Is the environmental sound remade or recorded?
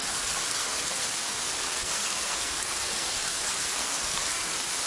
remade